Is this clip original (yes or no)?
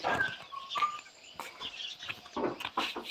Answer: yes